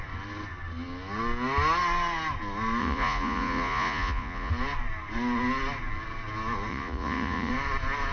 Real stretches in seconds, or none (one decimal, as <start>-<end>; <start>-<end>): 0.0-2.8; 4.5-6.7; 7.5-8.1